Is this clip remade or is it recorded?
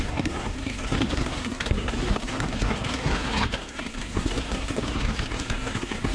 remade